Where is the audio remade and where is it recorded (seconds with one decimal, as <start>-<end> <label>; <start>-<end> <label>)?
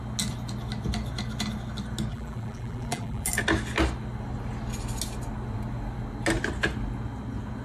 0.0-2.1 recorded; 2.1-3.3 remade; 3.3-7.6 recorded